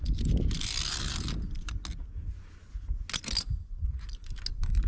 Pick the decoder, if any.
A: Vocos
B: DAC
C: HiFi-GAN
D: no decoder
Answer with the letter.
D